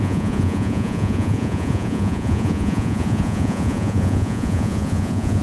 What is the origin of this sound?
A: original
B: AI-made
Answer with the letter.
B